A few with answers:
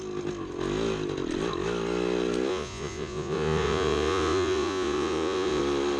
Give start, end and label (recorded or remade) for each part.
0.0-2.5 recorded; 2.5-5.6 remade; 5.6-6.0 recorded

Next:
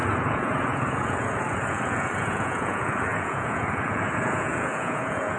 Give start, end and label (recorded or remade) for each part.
0.0-5.4 remade

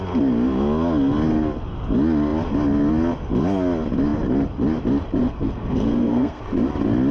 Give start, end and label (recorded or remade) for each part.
0.0-5.2 recorded; 5.2-6.4 remade; 6.4-7.1 recorded

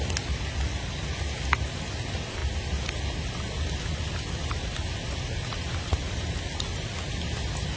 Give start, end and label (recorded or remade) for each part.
0.0-7.8 recorded

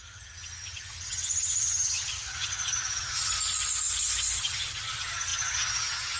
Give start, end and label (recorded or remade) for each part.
0.0-3.3 remade; 3.3-4.4 recorded; 4.4-6.2 remade

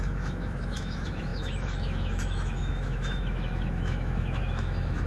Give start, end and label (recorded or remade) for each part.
0.0-5.1 remade